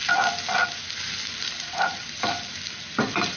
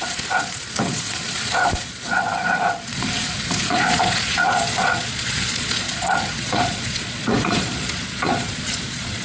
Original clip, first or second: first